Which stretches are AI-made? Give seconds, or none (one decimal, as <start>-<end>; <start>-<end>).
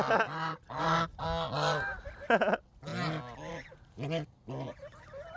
none